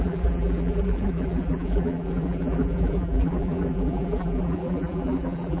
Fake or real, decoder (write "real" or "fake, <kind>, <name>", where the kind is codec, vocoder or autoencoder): fake, vocoder, BigVGAN v2